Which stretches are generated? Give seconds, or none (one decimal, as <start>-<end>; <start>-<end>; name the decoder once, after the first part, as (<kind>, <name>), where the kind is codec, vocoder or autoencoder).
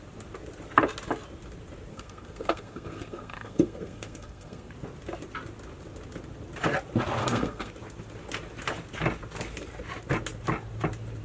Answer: 1.9-4.7 (codec, SNAC); 7.2-7.7